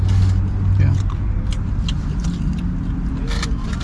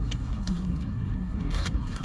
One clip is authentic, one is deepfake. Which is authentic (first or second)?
first